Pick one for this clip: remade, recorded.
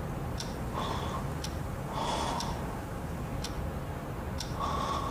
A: recorded